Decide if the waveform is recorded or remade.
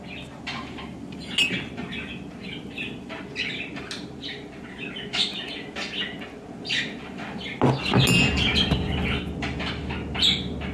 recorded